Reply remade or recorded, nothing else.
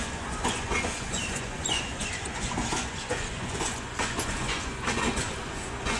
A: remade